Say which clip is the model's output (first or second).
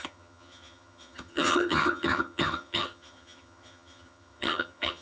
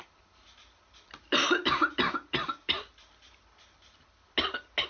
first